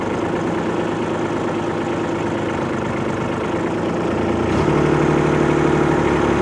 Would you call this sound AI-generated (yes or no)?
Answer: no